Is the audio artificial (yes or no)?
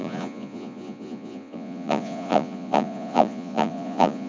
yes